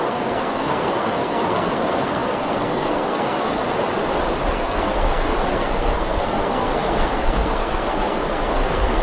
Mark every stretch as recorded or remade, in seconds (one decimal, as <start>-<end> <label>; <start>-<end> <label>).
0.0-3.6 remade; 3.6-4.5 recorded; 4.5-9.0 remade